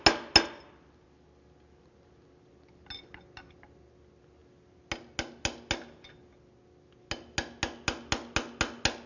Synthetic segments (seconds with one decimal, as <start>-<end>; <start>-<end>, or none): none